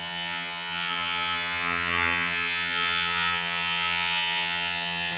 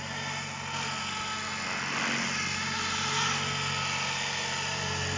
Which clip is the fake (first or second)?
first